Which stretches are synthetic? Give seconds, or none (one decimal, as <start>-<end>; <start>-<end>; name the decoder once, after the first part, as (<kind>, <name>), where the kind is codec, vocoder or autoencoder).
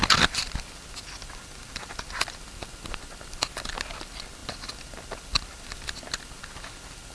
none